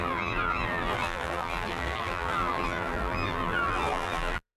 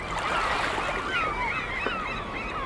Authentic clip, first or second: second